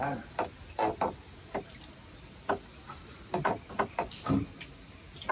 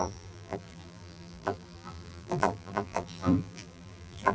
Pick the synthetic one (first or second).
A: second